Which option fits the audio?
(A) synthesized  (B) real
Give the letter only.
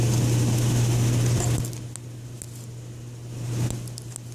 B